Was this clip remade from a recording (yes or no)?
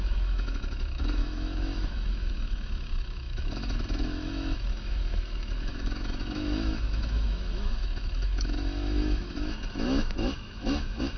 yes